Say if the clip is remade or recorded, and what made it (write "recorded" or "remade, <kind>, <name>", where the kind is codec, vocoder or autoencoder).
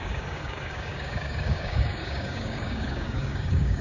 remade, codec, DAC